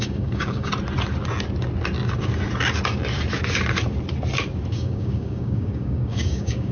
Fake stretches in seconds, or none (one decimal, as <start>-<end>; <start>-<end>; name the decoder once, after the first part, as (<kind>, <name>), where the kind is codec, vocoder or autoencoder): 0.0-0.7 (codec, DAC); 4.7-6.7